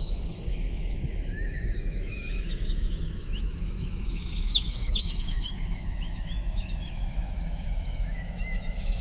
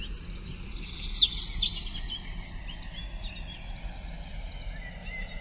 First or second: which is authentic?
second